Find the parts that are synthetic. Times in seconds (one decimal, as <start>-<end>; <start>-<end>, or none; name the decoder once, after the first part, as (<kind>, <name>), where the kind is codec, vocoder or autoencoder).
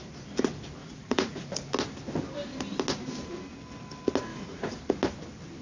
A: 0.8-1.7 (vocoder, Vocos); 4.3-4.8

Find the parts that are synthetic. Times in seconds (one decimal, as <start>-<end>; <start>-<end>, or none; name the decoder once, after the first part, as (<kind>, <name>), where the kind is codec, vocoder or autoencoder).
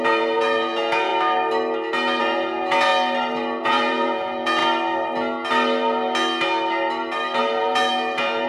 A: 0.0-1.1 (vocoder, Vocos); 2.2-2.9; 3.6-4.6; 7.4-8.5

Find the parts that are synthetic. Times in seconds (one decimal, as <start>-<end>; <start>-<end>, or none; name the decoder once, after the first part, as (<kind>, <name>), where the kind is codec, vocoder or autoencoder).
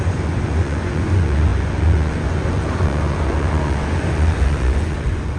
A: 0.0-5.4 (vocoder, Vocos)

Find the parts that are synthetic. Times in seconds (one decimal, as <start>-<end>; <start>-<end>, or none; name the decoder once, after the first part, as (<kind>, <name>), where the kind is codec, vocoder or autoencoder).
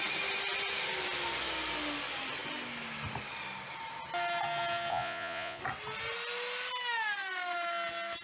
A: 4.9-5.6 (vocoder, Vocos)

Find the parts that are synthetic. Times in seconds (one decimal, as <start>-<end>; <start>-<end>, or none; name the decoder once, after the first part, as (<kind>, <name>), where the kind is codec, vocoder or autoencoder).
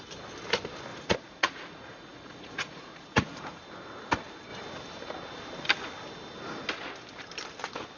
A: 0.9-3.6 (vocoder, Vocos)